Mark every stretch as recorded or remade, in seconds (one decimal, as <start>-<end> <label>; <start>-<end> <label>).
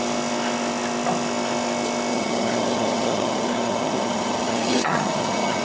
0.0-2.1 recorded; 2.1-5.6 remade